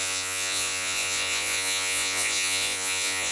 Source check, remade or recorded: remade